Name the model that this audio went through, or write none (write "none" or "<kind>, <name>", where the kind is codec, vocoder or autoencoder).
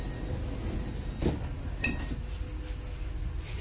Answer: none